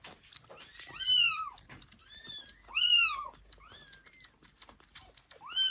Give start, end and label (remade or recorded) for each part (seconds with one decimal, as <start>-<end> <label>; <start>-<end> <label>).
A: 0.0-5.7 recorded